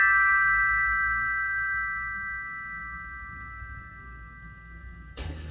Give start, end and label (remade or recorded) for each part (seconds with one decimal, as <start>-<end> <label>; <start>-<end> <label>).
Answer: 0.0-5.5 remade